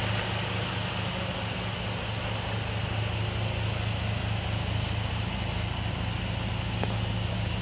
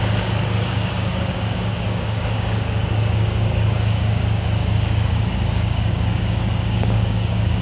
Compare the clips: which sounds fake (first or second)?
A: second